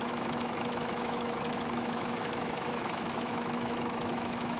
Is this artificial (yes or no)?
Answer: yes